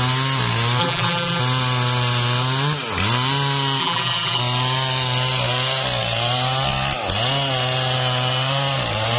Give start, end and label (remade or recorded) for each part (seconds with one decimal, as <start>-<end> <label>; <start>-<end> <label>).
0.0-0.8 recorded; 0.8-1.4 remade; 1.4-3.8 recorded; 3.8-4.4 remade; 4.4-9.2 recorded